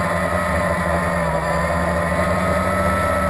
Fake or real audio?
real